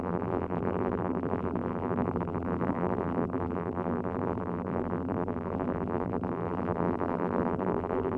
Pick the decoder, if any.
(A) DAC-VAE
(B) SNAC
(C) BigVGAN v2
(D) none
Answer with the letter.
C